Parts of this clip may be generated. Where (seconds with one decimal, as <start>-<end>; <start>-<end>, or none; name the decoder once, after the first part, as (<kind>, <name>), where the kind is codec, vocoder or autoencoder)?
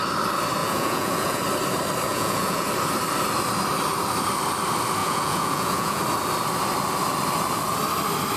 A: 0.6-1.4 (vocoder, Vocos); 2.1-2.7; 5.0-6.0